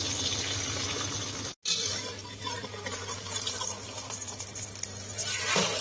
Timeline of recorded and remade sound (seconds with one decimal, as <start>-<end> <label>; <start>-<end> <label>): 0.0-1.9 recorded; 1.9-5.8 remade